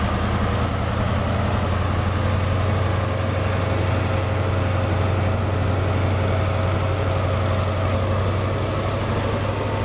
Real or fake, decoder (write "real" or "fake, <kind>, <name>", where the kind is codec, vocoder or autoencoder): real